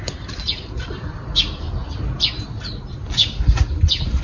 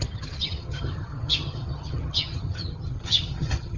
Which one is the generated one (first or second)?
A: second